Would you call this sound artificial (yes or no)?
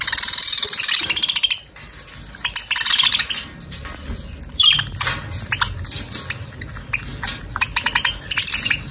no